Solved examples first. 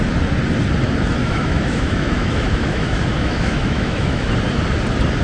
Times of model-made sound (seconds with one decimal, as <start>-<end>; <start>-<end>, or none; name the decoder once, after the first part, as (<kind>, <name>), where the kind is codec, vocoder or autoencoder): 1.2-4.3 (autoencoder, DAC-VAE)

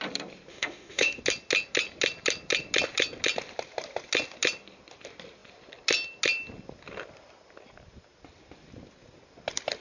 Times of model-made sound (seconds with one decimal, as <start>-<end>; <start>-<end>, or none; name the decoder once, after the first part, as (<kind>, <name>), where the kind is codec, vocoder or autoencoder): 0.5-1.2 (autoencoder, DAC-VAE)

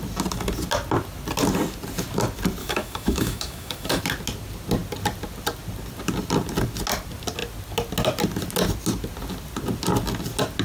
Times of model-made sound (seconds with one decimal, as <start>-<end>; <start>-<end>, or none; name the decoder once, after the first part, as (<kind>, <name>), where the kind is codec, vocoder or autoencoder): 2.6-4.0 (autoencoder, DAC-VAE)

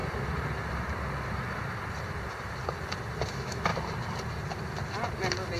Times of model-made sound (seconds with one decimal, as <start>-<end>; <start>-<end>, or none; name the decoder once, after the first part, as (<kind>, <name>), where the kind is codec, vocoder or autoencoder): 3.3-3.7 (autoencoder, DAC-VAE)

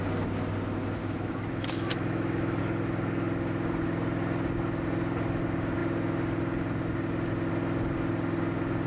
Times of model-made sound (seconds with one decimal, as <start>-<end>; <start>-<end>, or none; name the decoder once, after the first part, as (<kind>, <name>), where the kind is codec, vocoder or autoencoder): 1.0-2.6 (autoencoder, DAC-VAE)

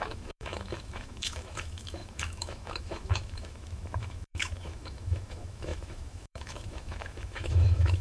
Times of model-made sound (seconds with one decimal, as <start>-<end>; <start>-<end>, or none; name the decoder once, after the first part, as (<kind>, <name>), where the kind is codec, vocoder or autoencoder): 0.0-8.0 (autoencoder, DAC-VAE)

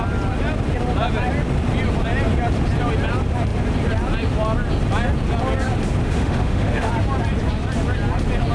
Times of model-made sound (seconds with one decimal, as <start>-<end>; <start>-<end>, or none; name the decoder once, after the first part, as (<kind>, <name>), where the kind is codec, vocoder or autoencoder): 6.0-6.9 (autoencoder, DAC-VAE)